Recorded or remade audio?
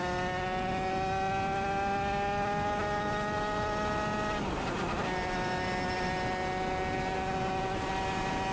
recorded